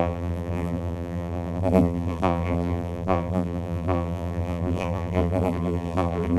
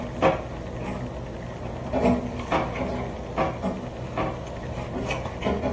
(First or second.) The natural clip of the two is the second